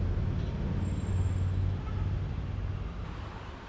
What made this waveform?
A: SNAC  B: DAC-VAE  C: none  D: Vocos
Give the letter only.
C